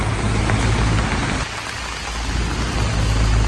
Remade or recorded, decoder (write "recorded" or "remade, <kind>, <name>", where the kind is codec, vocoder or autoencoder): recorded